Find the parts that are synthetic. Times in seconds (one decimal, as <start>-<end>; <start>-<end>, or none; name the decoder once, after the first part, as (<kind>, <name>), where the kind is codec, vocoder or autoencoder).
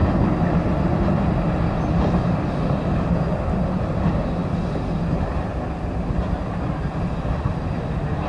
none